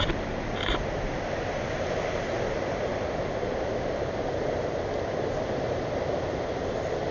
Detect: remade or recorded recorded